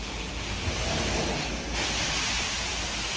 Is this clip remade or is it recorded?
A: recorded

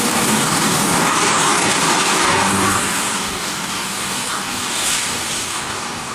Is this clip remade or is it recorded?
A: remade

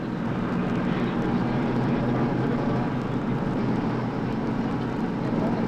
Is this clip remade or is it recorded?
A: recorded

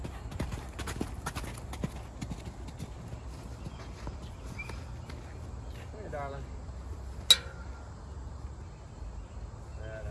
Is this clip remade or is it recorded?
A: recorded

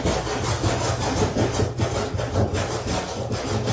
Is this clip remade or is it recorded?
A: recorded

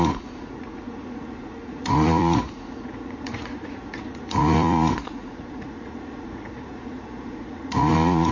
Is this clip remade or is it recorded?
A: remade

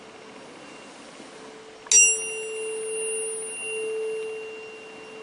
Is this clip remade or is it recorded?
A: recorded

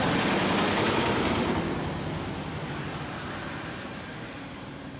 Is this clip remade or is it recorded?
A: recorded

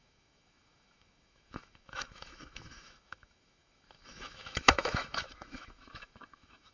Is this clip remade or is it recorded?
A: remade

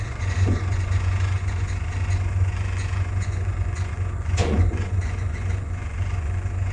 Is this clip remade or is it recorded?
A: remade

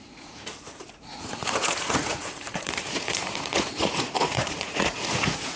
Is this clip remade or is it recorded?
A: remade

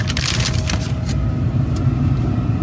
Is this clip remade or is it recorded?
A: recorded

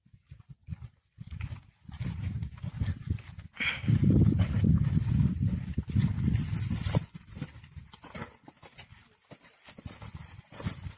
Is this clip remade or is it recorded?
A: recorded